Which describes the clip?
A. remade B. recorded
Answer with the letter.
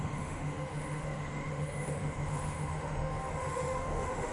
A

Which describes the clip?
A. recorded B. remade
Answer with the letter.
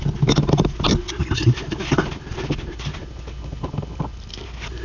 A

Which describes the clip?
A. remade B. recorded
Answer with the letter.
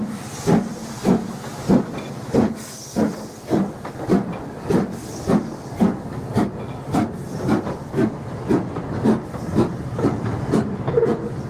B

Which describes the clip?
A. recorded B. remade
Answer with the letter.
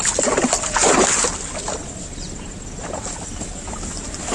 A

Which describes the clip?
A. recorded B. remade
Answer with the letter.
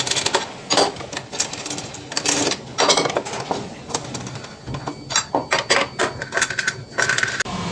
A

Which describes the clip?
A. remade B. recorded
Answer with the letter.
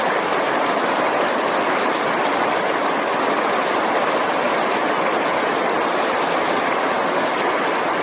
B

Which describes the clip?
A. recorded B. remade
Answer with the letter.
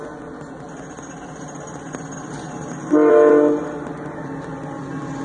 A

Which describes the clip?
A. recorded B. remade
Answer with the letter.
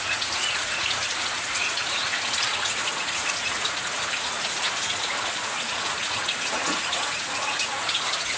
B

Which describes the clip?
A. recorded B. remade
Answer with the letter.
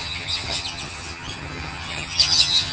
B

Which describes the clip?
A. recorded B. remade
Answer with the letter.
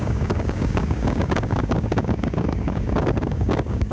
B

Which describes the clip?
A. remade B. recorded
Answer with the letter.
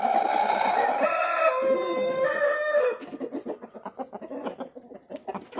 B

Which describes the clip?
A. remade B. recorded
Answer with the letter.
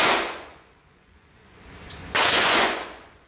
A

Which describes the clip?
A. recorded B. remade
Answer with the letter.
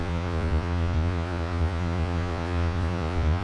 B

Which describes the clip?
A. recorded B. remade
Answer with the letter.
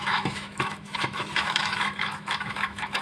B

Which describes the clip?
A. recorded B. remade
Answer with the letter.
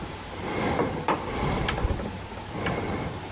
A